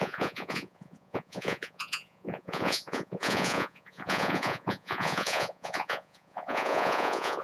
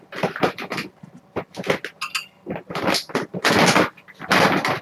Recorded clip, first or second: second